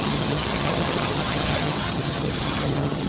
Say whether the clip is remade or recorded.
remade